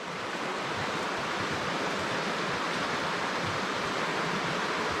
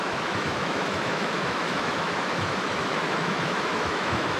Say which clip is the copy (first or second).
second